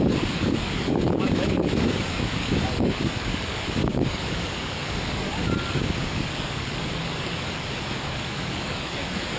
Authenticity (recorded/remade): remade